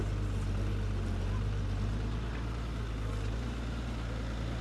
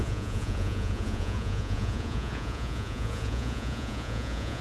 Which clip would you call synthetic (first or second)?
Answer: second